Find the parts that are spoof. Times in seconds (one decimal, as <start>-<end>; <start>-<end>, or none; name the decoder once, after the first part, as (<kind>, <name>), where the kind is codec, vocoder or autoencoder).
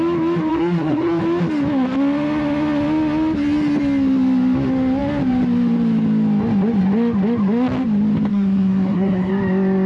0.5-1.2 (codec, SNAC); 8.3-9.3